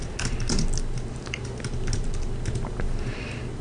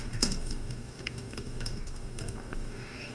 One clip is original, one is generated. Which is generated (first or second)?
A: second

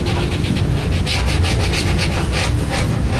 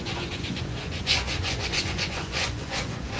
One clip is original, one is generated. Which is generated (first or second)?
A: second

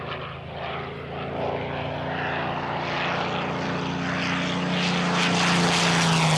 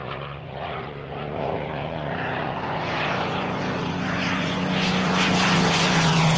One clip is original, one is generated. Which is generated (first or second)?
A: second